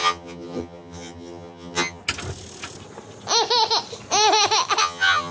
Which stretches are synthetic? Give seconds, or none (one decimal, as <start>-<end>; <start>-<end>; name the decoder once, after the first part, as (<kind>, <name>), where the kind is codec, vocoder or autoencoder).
0.0-2.0 (vocoder, HiFi-GAN); 4.8-5.3